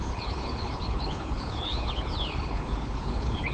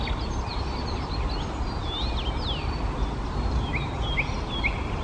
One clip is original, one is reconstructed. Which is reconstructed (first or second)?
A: first